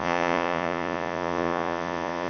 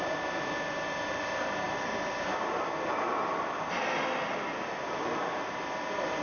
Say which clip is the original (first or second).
second